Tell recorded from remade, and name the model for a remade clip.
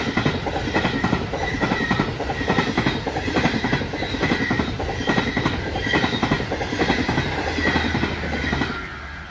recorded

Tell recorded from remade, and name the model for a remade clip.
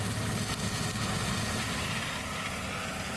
recorded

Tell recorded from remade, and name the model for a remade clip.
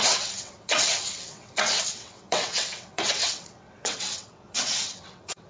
remade, vocoder, WaveNeXt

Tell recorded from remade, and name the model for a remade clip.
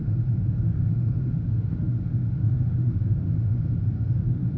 remade, autoencoder, DAC-VAE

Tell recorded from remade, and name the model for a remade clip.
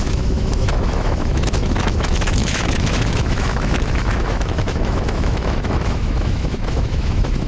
remade, autoencoder, DAC-VAE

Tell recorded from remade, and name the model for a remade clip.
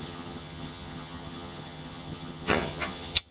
remade, vocoder, HiFi-GAN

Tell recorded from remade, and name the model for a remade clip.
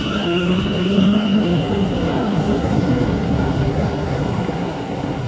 remade, codec, SNAC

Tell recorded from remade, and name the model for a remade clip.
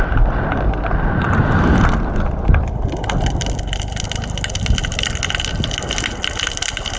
recorded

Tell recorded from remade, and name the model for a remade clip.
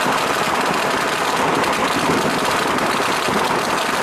remade, vocoder, BigVGAN v2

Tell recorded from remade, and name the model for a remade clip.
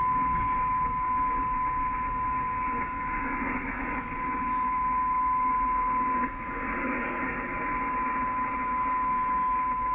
recorded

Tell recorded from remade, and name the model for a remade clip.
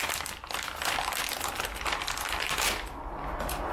recorded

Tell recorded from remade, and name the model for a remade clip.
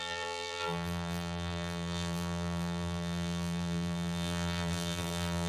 remade, vocoder, BigVGAN v2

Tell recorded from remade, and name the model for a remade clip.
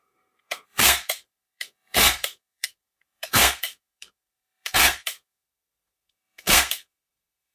remade, codec, SNAC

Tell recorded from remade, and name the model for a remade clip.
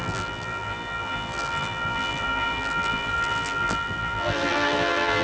remade, vocoder, BigVGAN v2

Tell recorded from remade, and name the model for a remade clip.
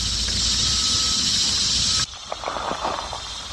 recorded